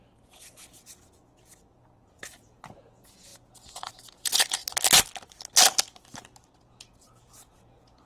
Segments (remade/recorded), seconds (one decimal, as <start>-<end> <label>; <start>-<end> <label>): 0.0-4.6 remade; 4.6-6.6 recorded; 6.6-8.1 remade